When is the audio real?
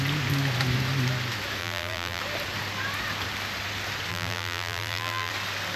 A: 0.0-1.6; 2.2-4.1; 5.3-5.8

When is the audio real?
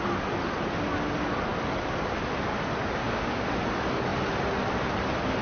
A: 0.0-3.0; 3.5-5.4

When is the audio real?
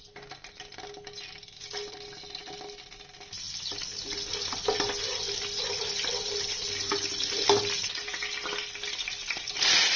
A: 0.0-10.0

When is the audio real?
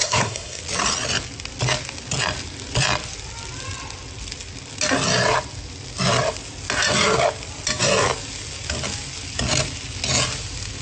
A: 0.6-10.8